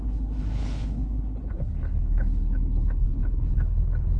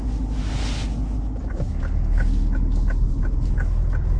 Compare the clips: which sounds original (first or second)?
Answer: second